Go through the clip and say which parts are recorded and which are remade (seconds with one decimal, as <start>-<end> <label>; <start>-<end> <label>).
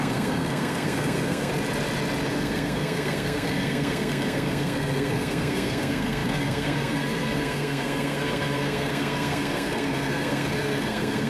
0.0-1.5 remade; 1.5-2.3 recorded; 2.3-11.3 remade